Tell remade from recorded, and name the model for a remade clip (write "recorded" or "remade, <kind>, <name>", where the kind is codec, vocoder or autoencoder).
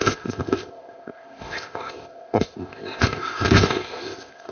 remade, codec, ZipCodec